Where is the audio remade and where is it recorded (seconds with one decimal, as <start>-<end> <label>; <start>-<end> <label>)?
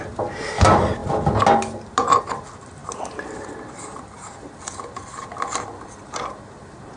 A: 0.0-7.0 recorded